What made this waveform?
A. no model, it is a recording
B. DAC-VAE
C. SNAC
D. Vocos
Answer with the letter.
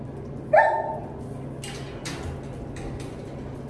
A